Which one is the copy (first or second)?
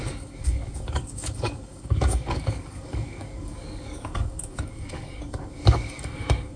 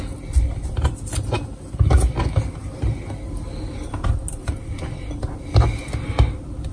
first